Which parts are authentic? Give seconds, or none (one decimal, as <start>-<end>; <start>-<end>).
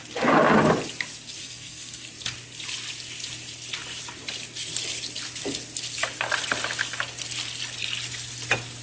0.0-1.4; 2.1-8.8